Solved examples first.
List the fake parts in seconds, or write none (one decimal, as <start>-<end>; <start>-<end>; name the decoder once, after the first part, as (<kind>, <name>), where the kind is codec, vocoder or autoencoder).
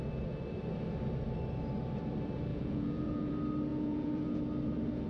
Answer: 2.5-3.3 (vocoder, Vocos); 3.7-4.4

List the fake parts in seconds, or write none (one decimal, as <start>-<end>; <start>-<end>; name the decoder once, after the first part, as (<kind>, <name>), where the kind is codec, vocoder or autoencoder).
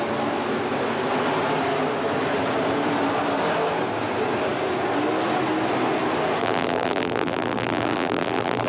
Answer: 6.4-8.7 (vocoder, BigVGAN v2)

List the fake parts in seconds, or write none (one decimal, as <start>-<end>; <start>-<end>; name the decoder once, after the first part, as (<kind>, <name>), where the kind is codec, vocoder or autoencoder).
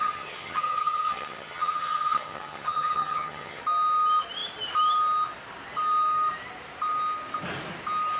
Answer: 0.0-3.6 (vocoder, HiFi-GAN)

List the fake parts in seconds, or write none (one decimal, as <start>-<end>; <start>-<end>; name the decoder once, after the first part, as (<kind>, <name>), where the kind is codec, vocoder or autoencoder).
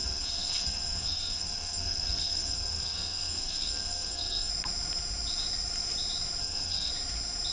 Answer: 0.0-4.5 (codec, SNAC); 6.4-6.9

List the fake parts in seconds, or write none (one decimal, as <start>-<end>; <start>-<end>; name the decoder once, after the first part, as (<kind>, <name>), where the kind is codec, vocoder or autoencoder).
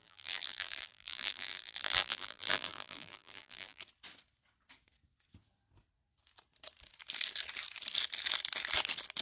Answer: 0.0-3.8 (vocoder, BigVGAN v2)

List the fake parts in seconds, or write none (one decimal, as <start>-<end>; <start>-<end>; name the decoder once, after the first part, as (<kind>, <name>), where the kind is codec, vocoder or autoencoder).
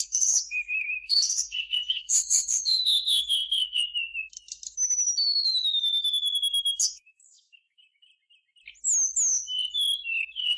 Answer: 0.0-3.8 (codec, SNAC); 6.8-8.1; 10.2-10.6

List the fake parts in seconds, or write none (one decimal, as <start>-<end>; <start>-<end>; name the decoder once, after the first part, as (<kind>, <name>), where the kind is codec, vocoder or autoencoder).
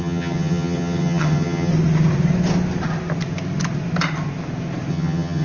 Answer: 0.0-1.7 (vocoder, HiFi-GAN); 4.9-5.4